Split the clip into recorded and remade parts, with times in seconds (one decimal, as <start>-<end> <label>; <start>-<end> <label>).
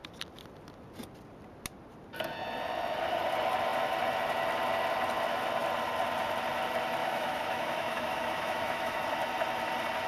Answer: 0.0-7.0 recorded; 7.0-9.0 remade; 9.0-10.1 recorded